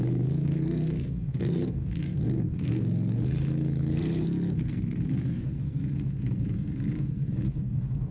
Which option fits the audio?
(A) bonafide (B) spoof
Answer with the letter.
B